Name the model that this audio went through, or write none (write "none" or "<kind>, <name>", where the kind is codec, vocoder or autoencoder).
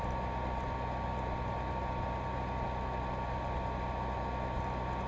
none